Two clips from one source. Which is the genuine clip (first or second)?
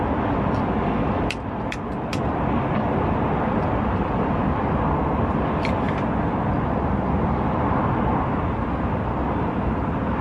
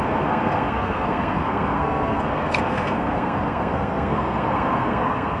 first